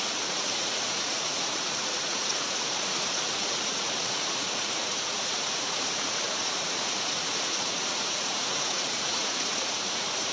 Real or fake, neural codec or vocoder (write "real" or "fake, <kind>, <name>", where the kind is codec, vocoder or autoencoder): fake, vocoder, Vocos